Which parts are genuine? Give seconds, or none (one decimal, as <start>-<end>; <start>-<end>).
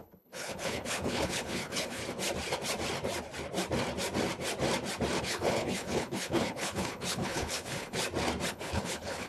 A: 2.0-5.2; 8.0-8.5